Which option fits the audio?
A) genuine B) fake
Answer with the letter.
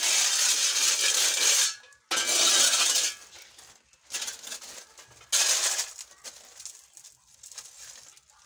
A